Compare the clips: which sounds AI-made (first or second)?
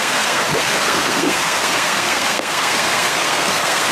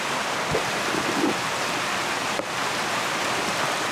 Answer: first